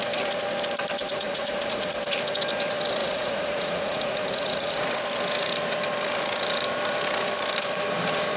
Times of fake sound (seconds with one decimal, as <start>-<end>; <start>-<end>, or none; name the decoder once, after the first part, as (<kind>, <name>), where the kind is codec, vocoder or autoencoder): 1.0-2.0 (vocoder, Vocos); 3.0-4.9